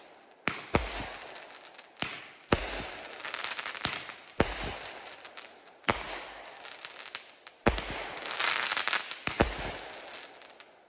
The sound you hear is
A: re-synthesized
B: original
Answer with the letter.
B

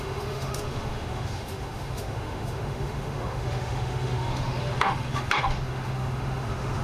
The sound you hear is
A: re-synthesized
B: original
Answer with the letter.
A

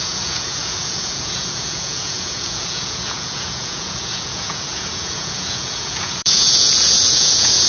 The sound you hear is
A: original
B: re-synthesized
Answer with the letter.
B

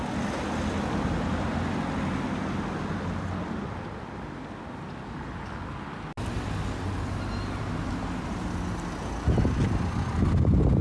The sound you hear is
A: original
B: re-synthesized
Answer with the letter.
A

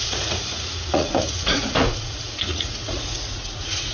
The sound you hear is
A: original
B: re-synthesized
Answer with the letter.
B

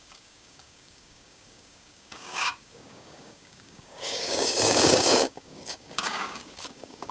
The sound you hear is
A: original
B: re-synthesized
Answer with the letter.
B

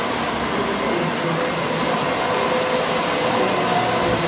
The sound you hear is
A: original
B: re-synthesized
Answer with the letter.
A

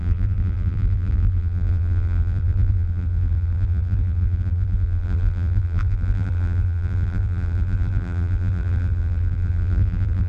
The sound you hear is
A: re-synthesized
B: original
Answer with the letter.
A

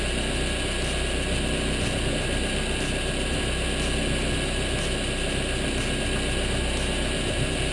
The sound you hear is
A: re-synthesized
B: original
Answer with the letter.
B